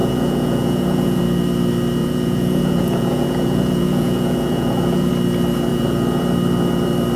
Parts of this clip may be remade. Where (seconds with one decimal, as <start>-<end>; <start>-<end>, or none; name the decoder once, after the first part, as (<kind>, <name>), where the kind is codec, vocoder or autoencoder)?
0.0-1.2 (vocoder, Vocos); 2.0-5.1; 5.7-6.2